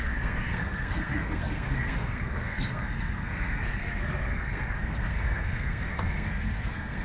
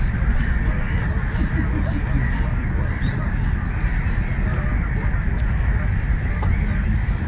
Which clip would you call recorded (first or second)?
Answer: second